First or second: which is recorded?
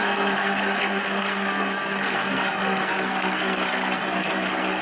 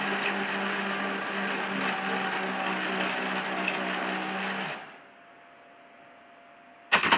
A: second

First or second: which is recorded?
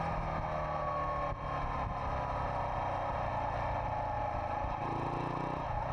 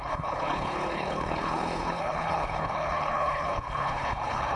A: first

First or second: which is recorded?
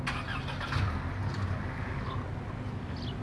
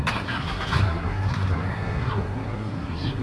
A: first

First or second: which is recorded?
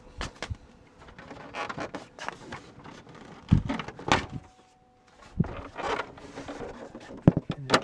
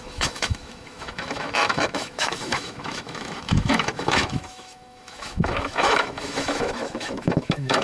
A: first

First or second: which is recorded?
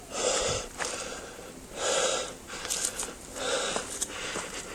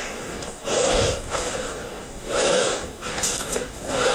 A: first